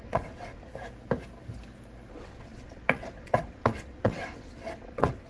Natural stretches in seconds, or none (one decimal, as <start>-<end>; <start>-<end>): 0.7-2.1